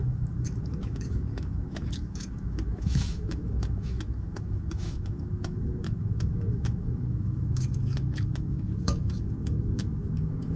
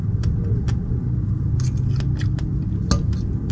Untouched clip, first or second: second